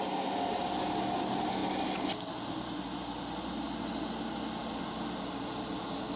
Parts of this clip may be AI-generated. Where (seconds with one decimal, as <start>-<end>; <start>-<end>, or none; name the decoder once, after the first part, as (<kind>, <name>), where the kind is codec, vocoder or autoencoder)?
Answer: 1.6-2.3 (vocoder, BigVGAN v2); 4.6-5.8